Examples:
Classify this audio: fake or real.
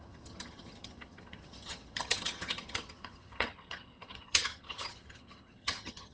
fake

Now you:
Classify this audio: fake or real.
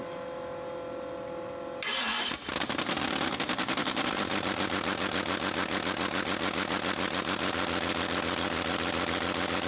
real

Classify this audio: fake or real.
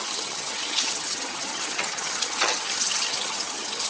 fake